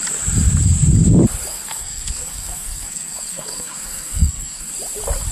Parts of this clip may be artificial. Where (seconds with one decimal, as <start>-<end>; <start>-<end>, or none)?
1.5-4.7